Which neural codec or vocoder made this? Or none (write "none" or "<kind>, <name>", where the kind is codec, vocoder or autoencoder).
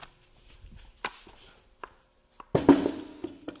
none